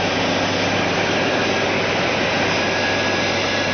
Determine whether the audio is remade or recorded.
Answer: recorded